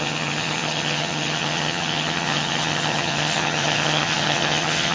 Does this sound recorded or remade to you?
remade